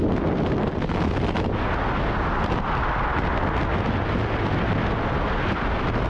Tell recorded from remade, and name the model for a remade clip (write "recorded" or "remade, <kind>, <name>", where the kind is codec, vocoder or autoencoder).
recorded